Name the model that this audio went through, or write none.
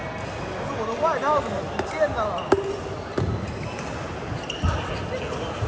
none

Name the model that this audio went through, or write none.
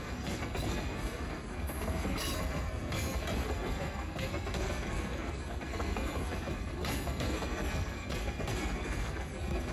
codec, SNAC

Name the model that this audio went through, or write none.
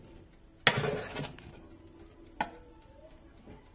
none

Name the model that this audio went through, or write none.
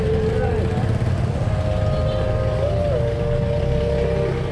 none